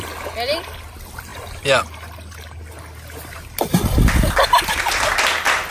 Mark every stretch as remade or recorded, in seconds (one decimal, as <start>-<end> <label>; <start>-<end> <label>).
0.0-5.7 recorded